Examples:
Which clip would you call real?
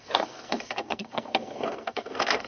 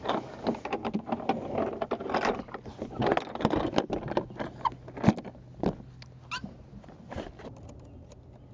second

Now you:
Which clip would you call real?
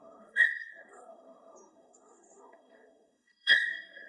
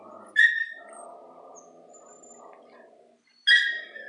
second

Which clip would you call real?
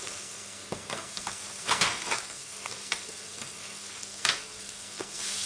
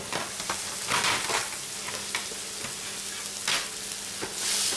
second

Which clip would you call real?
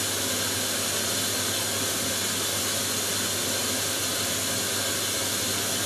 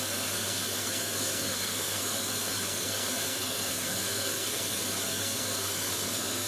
first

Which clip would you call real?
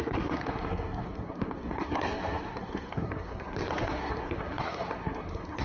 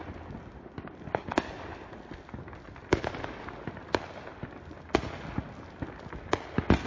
second